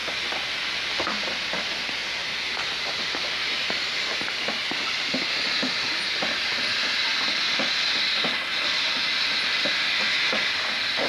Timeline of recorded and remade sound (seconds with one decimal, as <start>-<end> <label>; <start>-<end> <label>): 0.0-2.0 recorded; 2.0-5.6 remade; 5.6-8.5 recorded; 8.5-9.2 remade; 9.2-11.1 recorded